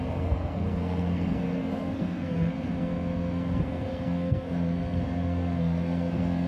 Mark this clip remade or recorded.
remade